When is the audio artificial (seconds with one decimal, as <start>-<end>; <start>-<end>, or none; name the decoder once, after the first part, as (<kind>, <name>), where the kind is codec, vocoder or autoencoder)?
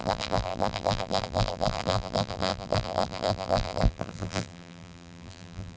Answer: 0.0-5.8 (vocoder, BigVGAN v2)